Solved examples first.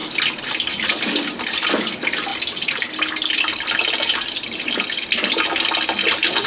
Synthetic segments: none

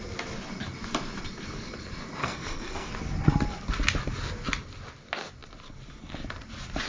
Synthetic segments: 2.2-2.9

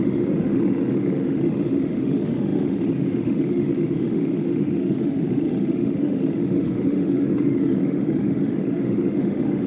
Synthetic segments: 0.0-9.7

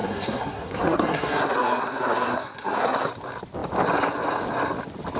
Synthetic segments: 0.0-3.1

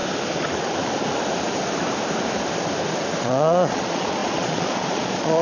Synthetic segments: 3.2-5.4

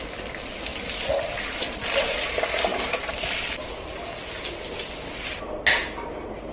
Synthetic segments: none

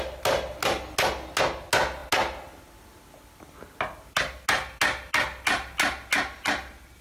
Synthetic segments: none

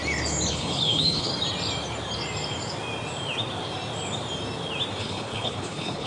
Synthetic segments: 0.5-1.3; 5.0-6.1